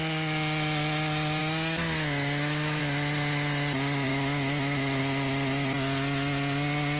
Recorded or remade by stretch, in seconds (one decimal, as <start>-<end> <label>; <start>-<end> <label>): 0.0-1.4 recorded; 1.4-2.8 remade; 2.8-4.1 recorded; 4.1-5.0 remade; 5.0-7.0 recorded